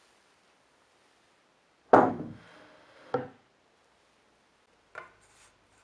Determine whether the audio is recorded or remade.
recorded